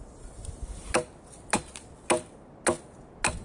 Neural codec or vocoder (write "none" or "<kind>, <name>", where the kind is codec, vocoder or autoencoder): none